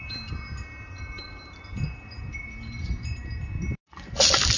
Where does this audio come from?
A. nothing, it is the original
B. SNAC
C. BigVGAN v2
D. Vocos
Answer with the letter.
A